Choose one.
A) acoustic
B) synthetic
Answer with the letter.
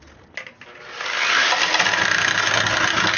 A